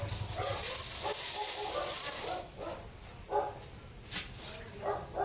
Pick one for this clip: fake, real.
real